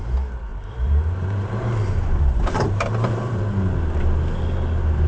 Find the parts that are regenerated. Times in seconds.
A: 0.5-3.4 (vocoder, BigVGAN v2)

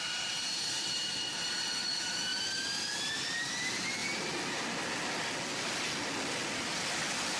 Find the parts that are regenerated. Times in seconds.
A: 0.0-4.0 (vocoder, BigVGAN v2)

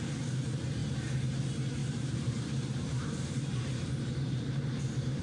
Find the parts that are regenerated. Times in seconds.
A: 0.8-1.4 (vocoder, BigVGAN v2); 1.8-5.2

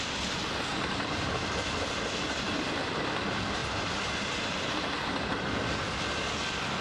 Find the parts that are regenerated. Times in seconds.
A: 0.7-1.5 (vocoder, BigVGAN v2); 3.6-4.6

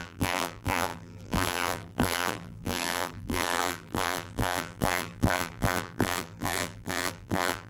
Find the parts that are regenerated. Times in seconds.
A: 0.0-7.7 (vocoder, BigVGAN v2)

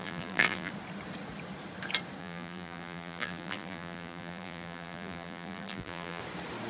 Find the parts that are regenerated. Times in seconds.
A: 0.0-0.7 (vocoder, BigVGAN v2); 2.2-6.2

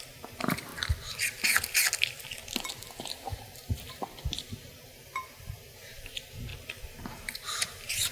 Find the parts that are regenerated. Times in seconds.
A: 0.0-0.7 (vocoder, BigVGAN v2); 3.0-6.5; 7.0-8.1

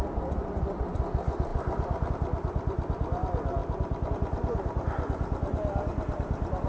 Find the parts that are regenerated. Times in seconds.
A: none